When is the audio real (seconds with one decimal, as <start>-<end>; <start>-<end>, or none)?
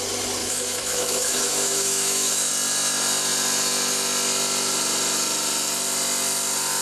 0.0-0.4; 2.5-6.8